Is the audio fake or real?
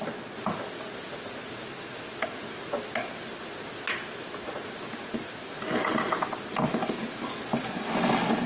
real